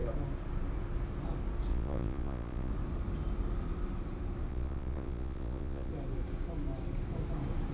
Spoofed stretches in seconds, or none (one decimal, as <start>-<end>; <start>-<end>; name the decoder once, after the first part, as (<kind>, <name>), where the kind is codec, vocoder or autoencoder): 1.7-2.7 (vocoder, Vocos); 4.5-5.9